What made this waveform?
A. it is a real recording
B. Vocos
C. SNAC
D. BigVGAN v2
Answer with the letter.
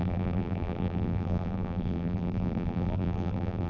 D